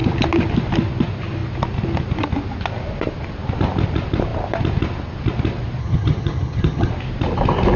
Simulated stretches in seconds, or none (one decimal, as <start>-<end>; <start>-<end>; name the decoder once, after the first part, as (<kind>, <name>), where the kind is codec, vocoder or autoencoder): 5.8-6.9 (vocoder, HiFi-GAN)